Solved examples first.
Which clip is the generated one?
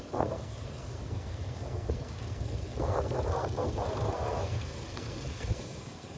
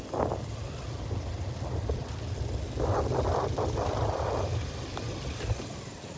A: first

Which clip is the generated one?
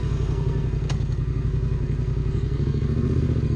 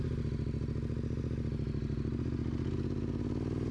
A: first